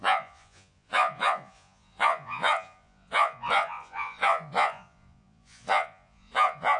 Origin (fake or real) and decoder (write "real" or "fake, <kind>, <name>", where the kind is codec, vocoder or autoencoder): fake, vocoder, Vocos